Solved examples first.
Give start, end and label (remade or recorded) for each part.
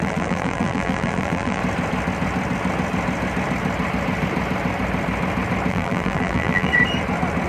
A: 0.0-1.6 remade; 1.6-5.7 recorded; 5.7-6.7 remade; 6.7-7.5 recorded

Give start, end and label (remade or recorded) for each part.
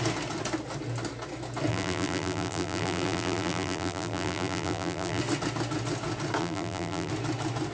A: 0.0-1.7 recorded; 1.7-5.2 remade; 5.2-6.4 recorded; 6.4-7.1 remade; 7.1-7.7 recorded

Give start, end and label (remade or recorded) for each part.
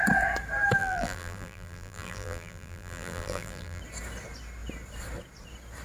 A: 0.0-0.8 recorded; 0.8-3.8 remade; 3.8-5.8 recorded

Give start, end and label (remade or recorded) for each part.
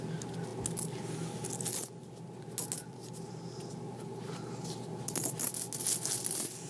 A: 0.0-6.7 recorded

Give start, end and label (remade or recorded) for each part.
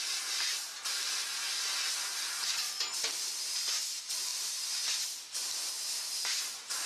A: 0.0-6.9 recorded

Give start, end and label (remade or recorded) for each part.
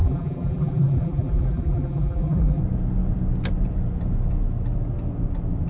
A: 0.0-2.6 remade; 2.6-5.7 recorded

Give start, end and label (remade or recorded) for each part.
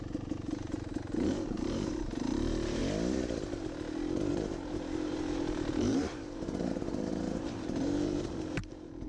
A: 0.0-2.8 remade; 2.8-4.3 recorded; 4.3-9.1 remade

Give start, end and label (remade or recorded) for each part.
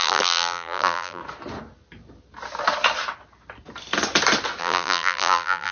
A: 0.0-1.2 remade; 1.2-4.6 recorded; 4.6-5.7 remade